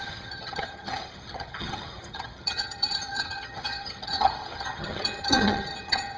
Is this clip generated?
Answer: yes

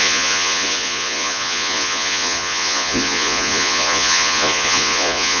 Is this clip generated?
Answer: yes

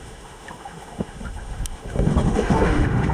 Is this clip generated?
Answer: yes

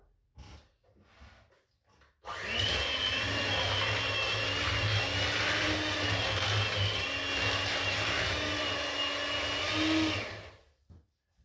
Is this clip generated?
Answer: no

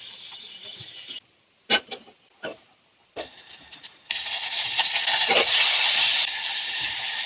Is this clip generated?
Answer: yes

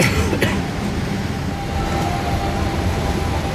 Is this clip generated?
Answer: no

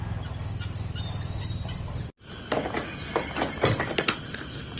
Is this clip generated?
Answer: no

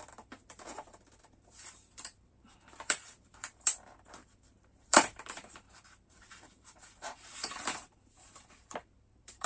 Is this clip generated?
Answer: yes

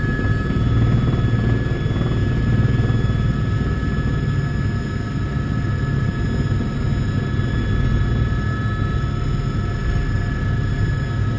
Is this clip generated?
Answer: no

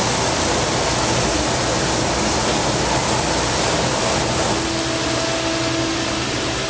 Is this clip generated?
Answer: no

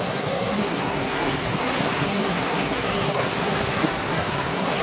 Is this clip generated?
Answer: yes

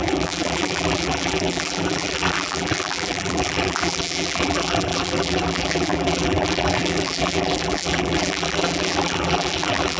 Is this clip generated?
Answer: yes